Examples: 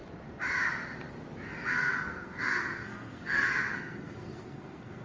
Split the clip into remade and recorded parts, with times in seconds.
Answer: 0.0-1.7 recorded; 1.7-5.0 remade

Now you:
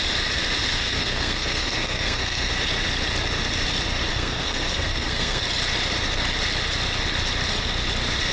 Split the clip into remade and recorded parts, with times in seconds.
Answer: 0.0-0.6 recorded; 0.6-2.5 remade; 2.5-4.1 recorded; 4.1-5.4 remade; 5.4-8.3 recorded

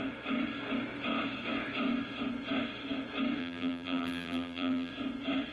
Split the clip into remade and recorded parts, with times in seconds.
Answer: 0.0-3.4 recorded; 3.4-4.9 remade; 4.9-5.5 recorded

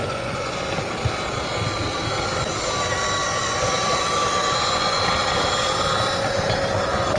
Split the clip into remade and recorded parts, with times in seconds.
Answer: 0.0-0.7 remade; 0.7-3.2 recorded; 3.2-4.0 remade; 4.0-4.4 recorded; 4.4-5.0 remade; 5.0-7.2 recorded

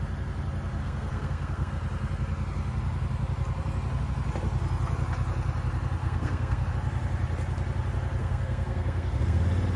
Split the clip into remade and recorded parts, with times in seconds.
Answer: 0.0-0.8 recorded; 0.8-1.7 remade; 1.7-6.0 recorded; 6.0-6.7 remade; 6.7-8.2 recorded; 8.2-9.4 remade; 9.4-9.8 recorded

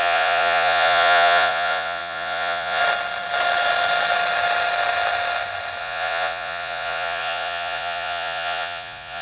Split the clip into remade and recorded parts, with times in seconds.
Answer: 0.0-2.8 remade; 2.8-5.8 recorded; 5.8-9.2 remade

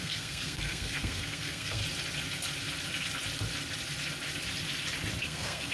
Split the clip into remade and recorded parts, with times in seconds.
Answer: 0.0-1.8 remade; 1.8-5.2 recorded; 5.2-5.7 remade